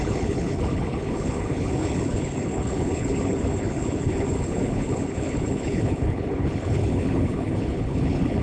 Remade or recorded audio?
remade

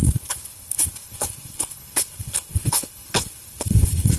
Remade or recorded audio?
remade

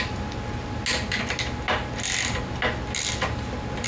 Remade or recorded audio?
recorded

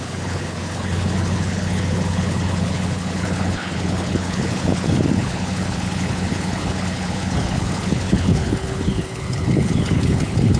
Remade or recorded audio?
remade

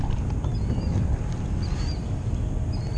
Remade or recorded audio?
recorded